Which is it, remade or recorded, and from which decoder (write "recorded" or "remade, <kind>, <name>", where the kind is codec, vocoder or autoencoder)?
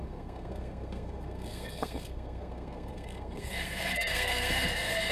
remade, codec, SNAC